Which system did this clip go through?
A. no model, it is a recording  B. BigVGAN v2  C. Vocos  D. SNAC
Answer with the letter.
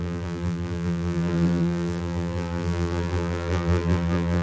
B